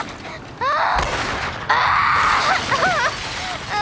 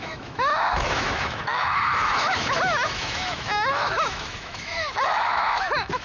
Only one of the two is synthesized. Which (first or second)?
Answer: second